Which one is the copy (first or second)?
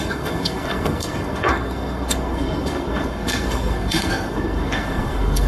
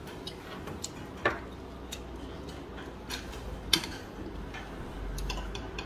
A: first